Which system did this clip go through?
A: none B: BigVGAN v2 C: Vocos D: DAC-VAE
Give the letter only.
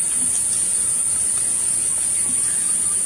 A